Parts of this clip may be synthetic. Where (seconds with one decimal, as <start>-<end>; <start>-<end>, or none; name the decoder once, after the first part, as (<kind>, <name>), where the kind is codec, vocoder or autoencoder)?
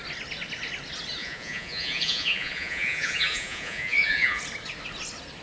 1.2-4.4 (vocoder, Vocos)